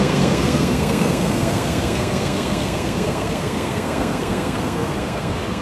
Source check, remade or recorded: remade